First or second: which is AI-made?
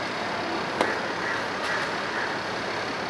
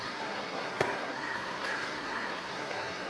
second